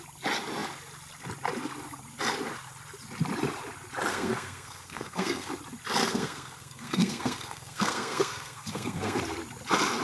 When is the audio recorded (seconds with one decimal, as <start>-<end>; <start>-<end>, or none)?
0.0-4.1; 5.5-6.0; 9.2-10.0